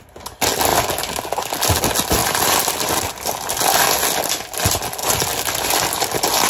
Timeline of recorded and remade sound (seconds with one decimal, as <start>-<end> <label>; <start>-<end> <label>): 0.0-2.2 recorded; 2.2-3.1 remade; 3.1-5.0 recorded; 5.0-5.7 remade; 5.7-6.5 recorded